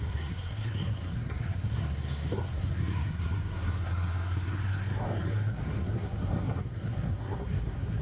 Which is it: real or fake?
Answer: fake